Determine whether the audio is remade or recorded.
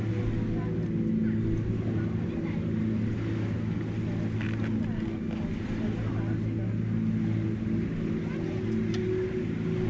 recorded